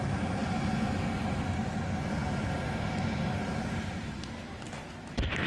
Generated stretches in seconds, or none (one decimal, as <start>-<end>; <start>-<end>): none